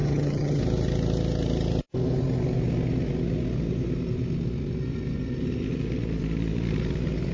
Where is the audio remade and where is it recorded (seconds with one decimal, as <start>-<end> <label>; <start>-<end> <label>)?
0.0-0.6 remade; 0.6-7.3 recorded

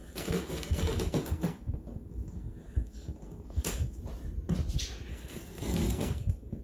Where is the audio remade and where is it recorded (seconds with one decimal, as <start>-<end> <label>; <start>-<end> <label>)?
0.0-4.0 remade; 4.0-5.1 recorded; 5.1-6.6 remade

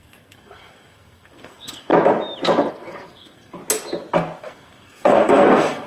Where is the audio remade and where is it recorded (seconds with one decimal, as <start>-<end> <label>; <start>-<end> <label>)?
0.0-1.9 remade; 1.9-2.7 recorded; 2.7-3.6 remade; 3.6-4.4 recorded; 4.4-5.9 remade